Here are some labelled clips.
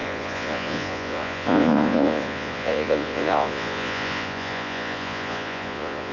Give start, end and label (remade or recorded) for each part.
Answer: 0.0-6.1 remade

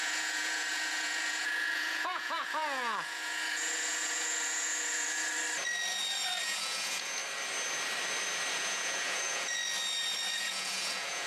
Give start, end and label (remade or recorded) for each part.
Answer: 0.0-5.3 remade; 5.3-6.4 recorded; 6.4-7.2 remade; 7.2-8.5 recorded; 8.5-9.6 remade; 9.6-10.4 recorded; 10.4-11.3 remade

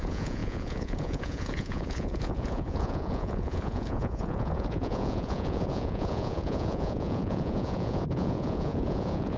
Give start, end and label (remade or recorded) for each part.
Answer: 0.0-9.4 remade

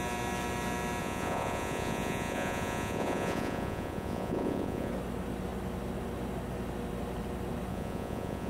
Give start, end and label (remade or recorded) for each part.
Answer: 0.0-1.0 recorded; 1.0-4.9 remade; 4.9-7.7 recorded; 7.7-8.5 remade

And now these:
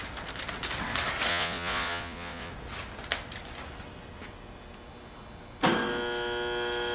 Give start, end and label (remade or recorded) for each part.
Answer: 0.0-1.3 recorded; 1.3-2.5 remade; 2.5-6.9 recorded

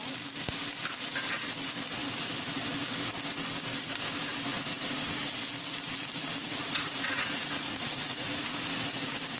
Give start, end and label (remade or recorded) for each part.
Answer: 0.0-4.5 recorded; 4.5-5.3 remade; 5.3-6.4 recorded; 6.4-8.7 remade; 8.7-9.4 recorded

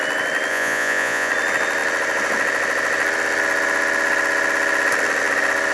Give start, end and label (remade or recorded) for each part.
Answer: 0.0-0.5 recorded; 0.5-1.3 remade; 1.3-5.7 recorded